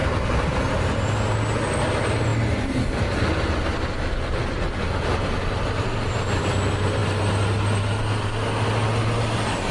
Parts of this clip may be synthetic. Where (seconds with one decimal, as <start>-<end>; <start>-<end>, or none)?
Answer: none